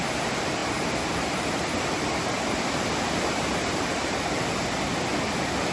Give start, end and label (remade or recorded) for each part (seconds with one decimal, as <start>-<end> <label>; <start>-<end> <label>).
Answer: 0.0-5.7 recorded